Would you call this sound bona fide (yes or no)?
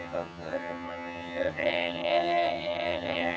no